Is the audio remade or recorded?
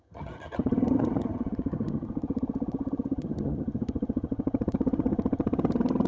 remade